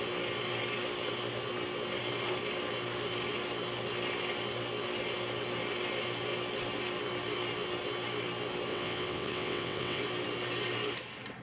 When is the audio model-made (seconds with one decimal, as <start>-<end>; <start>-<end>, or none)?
8.7-10.0